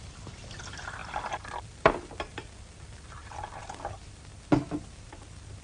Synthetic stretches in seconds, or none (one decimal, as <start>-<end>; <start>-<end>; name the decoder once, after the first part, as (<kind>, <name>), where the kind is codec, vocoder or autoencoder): 0.0-5.6 (vocoder, BigVGAN v2)